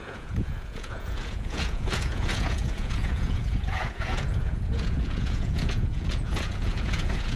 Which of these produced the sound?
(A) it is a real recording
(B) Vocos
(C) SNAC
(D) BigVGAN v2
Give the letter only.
B